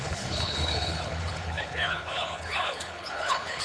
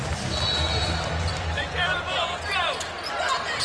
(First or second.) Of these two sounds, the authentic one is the second